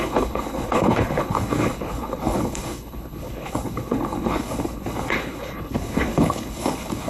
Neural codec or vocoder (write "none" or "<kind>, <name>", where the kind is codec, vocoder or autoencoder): codec, HILCodec